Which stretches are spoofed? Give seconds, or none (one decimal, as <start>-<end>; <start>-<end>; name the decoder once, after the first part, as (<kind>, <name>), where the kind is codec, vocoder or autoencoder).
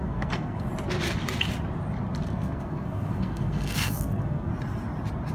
0.0-0.7 (codec, SNAC); 2.2-4.5